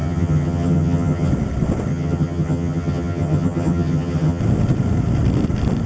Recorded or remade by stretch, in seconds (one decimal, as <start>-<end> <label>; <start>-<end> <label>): 0.0-1.3 remade; 1.3-1.9 recorded; 1.9-4.4 remade; 4.4-5.9 recorded